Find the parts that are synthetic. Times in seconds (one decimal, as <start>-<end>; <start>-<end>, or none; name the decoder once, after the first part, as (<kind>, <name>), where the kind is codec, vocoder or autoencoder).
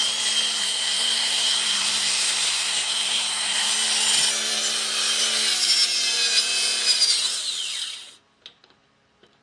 0.6-3.7 (codec, SNAC)